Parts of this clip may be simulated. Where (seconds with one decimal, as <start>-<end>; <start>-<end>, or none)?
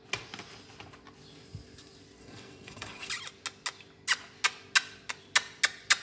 2.2-3.1